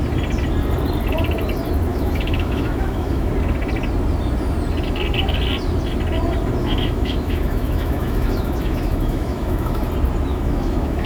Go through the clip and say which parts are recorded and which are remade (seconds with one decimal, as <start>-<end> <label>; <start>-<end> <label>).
0.0-1.9 recorded; 1.9-3.3 remade; 3.3-6.6 recorded; 6.6-9.9 remade; 9.9-10.3 recorded; 10.3-11.1 remade